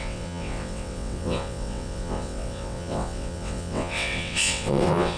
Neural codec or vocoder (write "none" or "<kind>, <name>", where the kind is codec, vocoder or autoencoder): vocoder, WaveNeXt